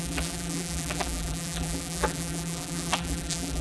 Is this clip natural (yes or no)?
no